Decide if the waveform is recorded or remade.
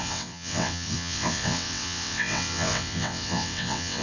remade